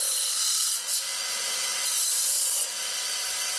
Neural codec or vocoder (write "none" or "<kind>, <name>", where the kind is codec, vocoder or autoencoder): none